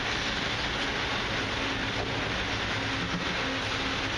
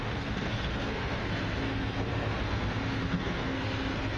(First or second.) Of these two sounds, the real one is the first